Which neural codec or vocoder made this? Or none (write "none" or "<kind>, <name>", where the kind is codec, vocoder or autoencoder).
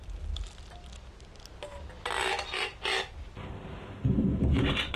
none